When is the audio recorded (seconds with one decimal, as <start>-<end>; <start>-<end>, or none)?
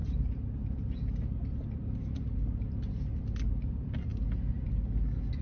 0.0-5.4